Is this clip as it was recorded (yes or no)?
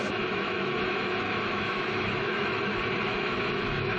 no